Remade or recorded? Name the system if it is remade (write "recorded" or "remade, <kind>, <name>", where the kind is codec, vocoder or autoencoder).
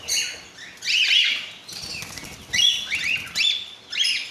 recorded